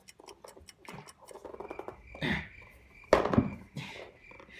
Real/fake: real